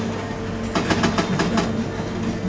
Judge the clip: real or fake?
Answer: real